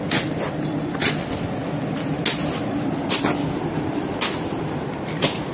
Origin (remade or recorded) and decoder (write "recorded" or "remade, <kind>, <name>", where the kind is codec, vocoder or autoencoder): recorded